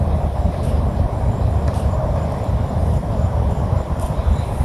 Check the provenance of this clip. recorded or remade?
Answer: remade